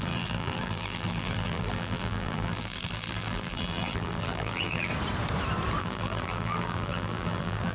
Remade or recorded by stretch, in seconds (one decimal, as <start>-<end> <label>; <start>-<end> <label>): 0.0-4.9 remade; 4.9-5.8 recorded; 5.8-7.7 remade